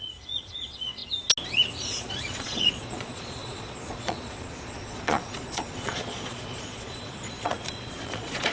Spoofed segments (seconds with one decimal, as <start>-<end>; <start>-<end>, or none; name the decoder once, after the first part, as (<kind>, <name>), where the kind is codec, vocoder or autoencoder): 0.0-1.0 (vocoder, Vocos); 1.8-8.5